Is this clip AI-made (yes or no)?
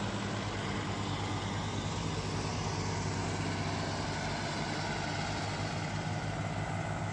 no